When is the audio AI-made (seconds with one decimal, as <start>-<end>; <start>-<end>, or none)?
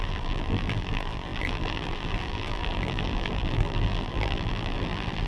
0.0-5.3